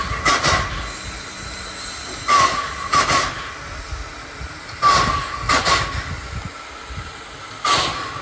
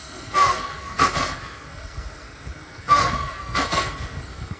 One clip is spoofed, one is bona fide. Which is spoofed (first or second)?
second